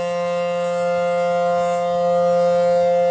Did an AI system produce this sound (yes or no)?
no